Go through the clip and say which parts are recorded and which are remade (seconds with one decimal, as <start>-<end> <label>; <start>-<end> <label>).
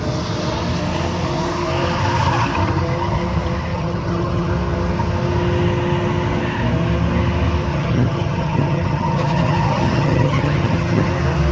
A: 0.0-3.7 recorded; 3.7-4.5 remade; 4.5-7.7 recorded; 7.7-11.1 remade; 11.1-11.5 recorded